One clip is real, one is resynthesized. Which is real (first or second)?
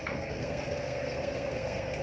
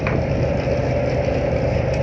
second